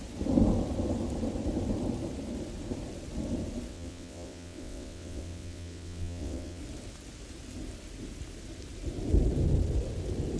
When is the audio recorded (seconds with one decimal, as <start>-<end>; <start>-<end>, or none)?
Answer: 0.0-3.7; 6.6-10.4